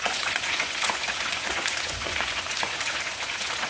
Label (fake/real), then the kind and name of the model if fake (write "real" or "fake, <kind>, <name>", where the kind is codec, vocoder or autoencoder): fake, vocoder, Vocos